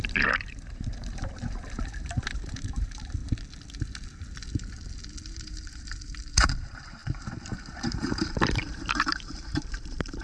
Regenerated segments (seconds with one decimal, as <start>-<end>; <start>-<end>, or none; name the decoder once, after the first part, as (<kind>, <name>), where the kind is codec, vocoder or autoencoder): 0.0-3.2 (vocoder, BigVGAN v2); 5.3-10.2